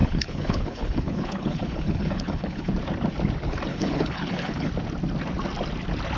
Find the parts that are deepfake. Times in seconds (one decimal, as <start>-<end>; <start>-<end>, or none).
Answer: 0.0-2.7; 3.7-4.7